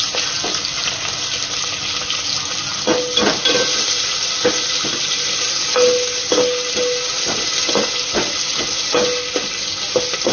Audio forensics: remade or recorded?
recorded